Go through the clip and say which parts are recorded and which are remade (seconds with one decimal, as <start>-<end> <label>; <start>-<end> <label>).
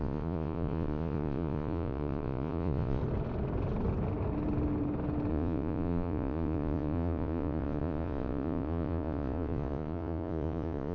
0.0-3.0 remade; 3.0-5.3 recorded; 5.3-10.9 remade